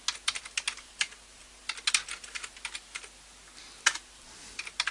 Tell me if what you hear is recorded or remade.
recorded